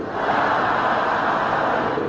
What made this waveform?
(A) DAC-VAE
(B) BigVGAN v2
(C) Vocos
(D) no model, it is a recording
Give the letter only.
D